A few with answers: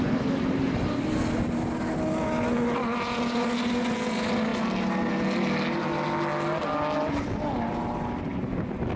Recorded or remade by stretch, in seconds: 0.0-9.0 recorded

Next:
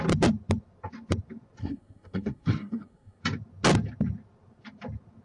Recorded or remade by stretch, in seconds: 0.0-1.6 recorded; 1.6-3.2 remade; 3.2-5.2 recorded

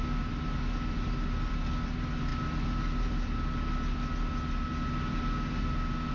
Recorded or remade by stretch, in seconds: 0.0-6.1 recorded

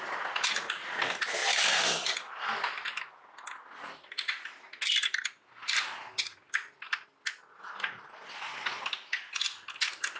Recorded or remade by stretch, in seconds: 0.0-1.4 recorded; 1.4-3.0 remade; 3.0-10.2 recorded